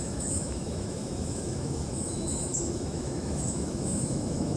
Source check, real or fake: fake